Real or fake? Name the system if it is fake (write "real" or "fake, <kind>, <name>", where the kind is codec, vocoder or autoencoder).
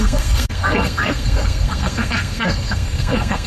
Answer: fake, codec, SNAC